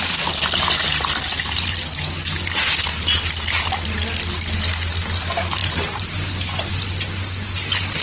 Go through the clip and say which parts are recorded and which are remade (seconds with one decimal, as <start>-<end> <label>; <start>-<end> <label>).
0.0-5.6 recorded; 5.6-6.7 remade; 6.7-8.0 recorded